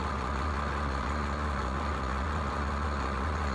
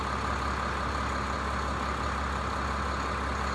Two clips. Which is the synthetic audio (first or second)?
first